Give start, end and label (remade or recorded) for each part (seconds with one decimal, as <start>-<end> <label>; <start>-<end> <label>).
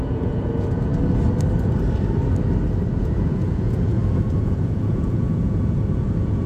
0.0-0.9 remade; 0.9-3.0 recorded; 3.0-6.5 remade